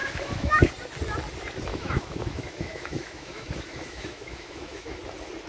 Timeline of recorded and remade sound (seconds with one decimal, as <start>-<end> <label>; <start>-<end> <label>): 0.0-0.7 remade; 0.7-1.7 recorded; 1.7-5.0 remade; 5.0-5.5 recorded